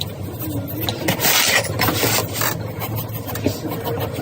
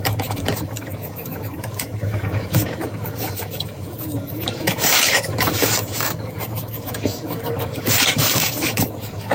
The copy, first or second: second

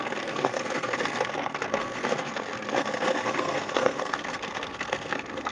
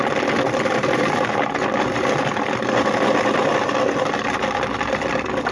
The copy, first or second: first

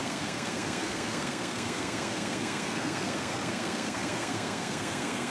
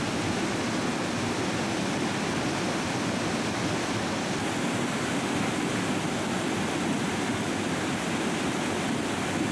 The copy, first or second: first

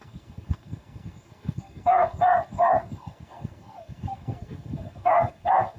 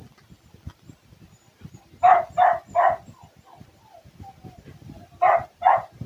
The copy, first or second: first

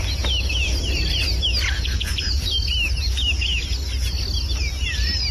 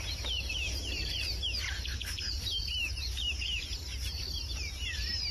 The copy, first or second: second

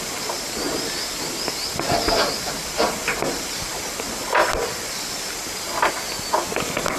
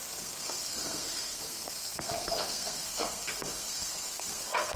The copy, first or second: second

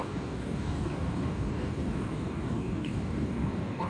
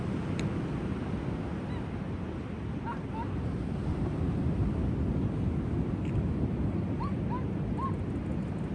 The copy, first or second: first